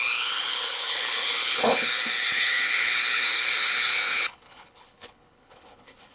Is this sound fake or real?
fake